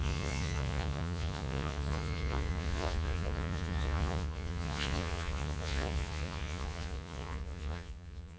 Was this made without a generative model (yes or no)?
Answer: no